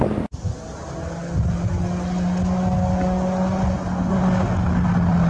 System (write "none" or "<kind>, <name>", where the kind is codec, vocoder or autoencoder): none